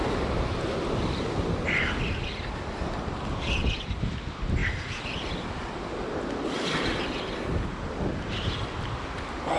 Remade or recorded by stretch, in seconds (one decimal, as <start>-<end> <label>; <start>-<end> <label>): 0.0-9.6 recorded